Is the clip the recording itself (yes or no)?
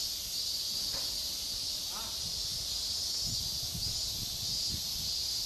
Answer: yes